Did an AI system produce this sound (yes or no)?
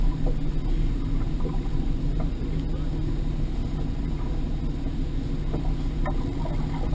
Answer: no